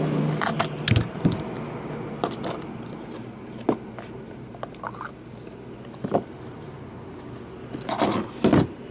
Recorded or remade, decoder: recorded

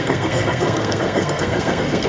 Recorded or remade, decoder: remade, codec, SNAC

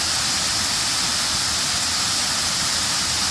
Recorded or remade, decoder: recorded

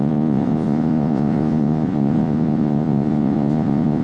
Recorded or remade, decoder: remade, vocoder, Vocos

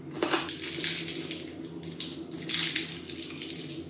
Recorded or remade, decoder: recorded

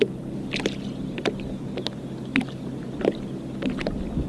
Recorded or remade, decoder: recorded